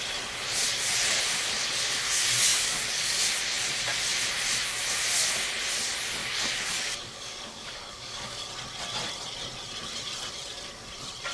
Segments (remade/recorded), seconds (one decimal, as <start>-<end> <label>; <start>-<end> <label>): 0.0-2.5 recorded; 2.5-3.2 remade; 3.2-6.2 recorded; 6.2-8.5 remade; 8.5-11.3 recorded